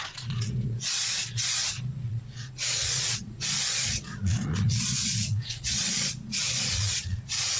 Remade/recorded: remade